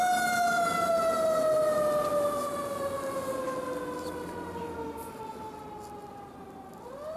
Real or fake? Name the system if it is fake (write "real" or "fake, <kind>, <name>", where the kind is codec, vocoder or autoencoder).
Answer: real